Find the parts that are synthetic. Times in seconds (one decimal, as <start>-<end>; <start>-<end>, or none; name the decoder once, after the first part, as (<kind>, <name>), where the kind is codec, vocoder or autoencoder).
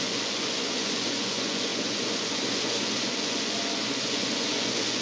0.0-5.0 (vocoder, Vocos)